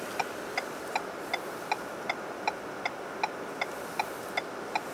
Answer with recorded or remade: recorded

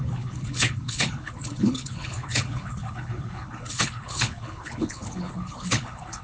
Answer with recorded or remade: remade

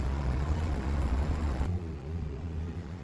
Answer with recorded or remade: remade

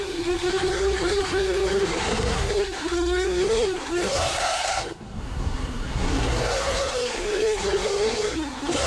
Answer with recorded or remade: remade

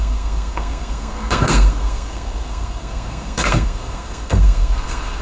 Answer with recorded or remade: remade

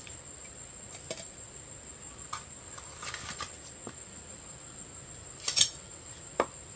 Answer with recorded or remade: recorded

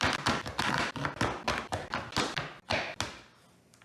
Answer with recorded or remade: recorded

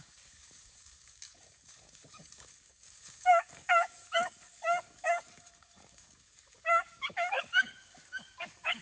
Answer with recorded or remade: remade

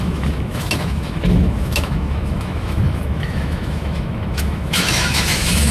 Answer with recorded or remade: remade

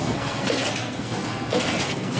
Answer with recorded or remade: remade